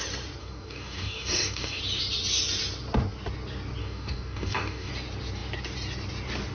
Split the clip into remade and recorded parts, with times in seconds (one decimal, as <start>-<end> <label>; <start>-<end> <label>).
0.0-0.4 recorded; 0.4-1.8 remade; 1.8-3.8 recorded; 3.8-4.9 remade; 4.9-6.5 recorded